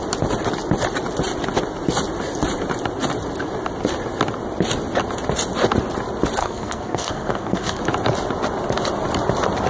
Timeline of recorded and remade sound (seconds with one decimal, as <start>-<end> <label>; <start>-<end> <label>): 0.0-6.4 recorded; 6.4-7.8 remade; 7.8-9.7 recorded